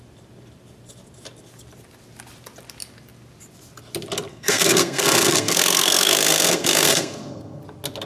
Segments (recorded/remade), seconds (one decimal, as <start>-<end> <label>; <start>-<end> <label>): 0.0-4.3 recorded; 4.3-7.6 remade; 7.6-8.1 recorded